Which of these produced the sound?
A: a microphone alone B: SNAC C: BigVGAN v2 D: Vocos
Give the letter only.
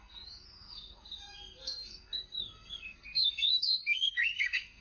B